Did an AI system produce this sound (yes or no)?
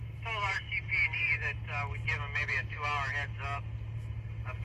no